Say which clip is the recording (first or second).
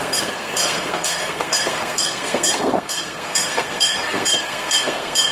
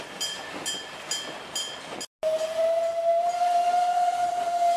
second